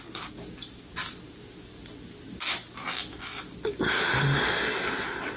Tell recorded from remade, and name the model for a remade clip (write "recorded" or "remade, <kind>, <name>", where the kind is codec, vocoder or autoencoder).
recorded